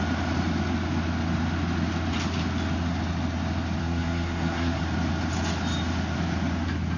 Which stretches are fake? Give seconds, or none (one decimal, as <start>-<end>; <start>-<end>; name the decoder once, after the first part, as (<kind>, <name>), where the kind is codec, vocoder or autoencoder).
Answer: 3.8-4.8 (codec, SNAC)